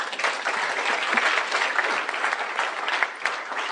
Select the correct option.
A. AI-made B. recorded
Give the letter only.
B